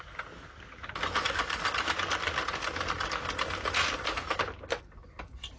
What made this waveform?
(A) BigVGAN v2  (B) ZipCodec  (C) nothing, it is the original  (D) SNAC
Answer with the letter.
C